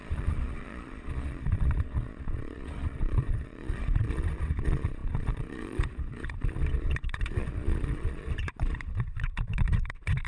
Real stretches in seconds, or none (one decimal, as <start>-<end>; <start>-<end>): none